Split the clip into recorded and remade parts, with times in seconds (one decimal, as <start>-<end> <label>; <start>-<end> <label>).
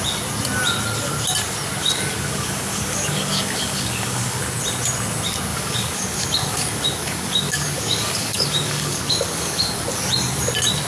0.0-1.8 recorded; 1.8-4.4 remade; 4.4-5.5 recorded; 5.5-9.8 remade; 9.8-10.9 recorded